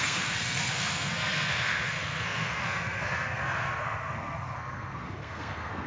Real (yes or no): no